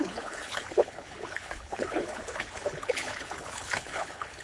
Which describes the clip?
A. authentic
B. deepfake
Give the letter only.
B